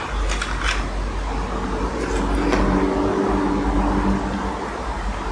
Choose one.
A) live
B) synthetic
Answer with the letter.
A